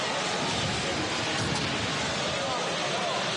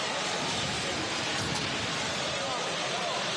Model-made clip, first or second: second